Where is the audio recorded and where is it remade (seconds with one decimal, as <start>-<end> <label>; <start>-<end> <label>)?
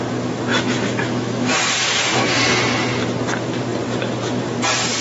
0.0-0.5 recorded; 0.5-1.5 remade; 1.5-5.0 recorded